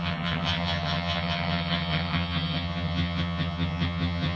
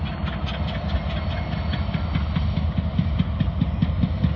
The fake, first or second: first